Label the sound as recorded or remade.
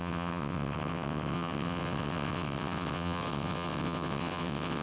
remade